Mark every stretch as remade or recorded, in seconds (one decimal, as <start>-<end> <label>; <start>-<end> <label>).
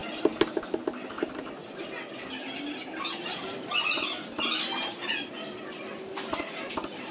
0.0-7.1 recorded